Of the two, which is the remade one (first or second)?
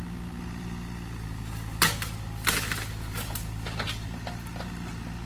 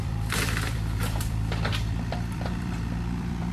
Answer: second